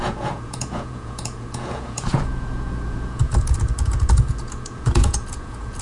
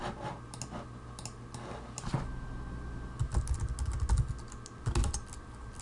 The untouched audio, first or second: second